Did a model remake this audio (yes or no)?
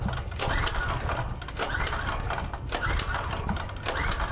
no